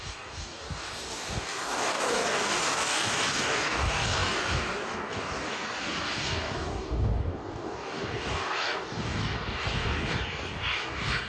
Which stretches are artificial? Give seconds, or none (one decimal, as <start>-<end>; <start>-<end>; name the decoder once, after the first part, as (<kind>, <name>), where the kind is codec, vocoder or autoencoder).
0.0-11.3 (codec, DAC)